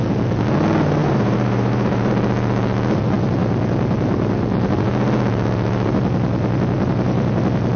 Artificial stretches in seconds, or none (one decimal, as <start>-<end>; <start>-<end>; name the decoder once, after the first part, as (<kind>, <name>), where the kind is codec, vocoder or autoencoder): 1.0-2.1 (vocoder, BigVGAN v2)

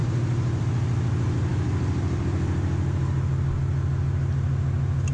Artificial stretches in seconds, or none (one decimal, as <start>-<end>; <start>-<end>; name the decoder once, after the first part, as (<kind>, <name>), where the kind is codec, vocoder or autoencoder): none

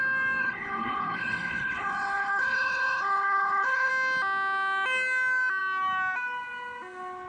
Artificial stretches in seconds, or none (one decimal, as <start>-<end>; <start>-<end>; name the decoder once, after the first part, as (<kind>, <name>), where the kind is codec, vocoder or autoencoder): 0.4-3.9 (codec, HILCodec)

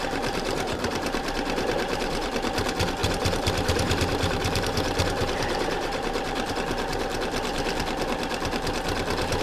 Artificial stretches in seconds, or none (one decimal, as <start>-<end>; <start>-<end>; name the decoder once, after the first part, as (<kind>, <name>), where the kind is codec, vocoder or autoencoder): 0.0-2.3 (vocoder, BigVGAN v2); 3.0-6.5